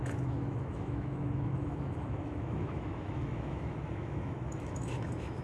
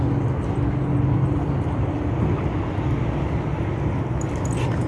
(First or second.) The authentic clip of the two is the second